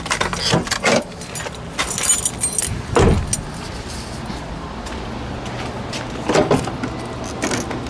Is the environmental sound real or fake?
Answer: real